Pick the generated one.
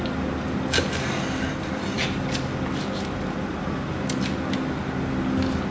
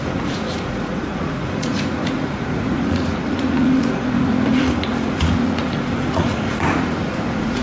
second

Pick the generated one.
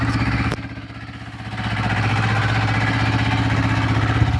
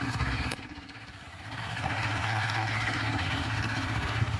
second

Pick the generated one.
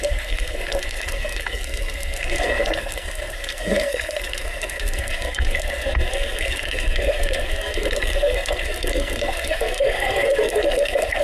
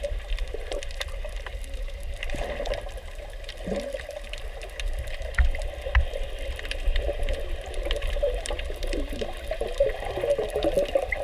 first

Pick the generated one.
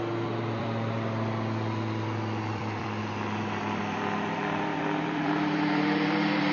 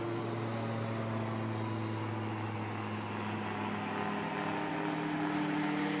first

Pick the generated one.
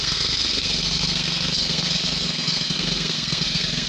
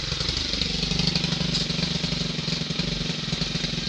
first